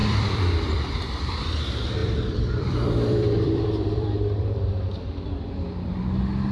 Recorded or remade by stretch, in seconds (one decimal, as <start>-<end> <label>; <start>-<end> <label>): 0.0-1.6 remade; 1.6-2.0 recorded; 2.0-5.9 remade; 5.9-6.5 recorded